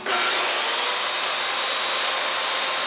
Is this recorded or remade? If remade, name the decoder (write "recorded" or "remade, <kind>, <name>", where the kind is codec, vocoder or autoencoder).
recorded